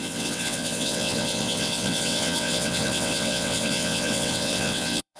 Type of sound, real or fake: fake